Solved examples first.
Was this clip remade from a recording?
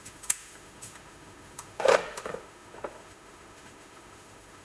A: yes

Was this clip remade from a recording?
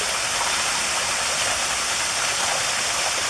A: no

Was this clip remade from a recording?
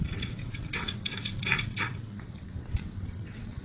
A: yes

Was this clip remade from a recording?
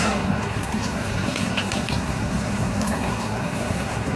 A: yes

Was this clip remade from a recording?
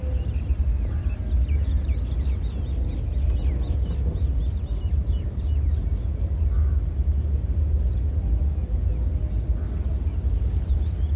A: no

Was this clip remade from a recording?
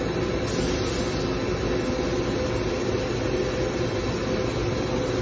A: no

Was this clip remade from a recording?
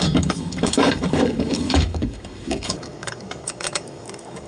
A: yes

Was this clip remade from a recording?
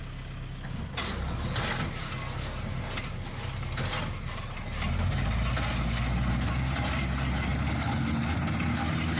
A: no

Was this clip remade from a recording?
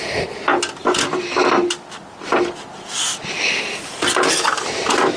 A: no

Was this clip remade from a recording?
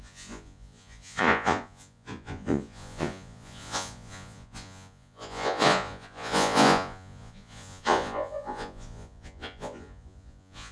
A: yes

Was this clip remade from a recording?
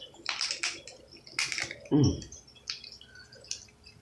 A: no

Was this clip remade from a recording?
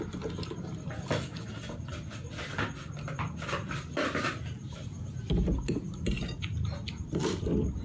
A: no